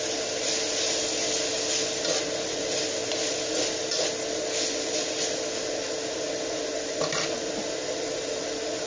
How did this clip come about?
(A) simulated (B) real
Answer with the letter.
B